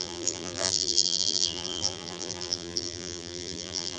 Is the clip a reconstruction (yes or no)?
yes